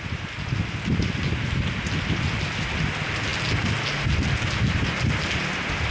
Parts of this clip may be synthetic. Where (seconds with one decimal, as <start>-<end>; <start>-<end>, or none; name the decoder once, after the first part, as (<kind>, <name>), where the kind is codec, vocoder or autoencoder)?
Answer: none